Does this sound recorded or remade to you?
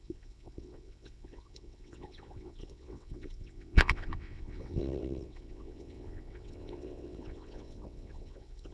remade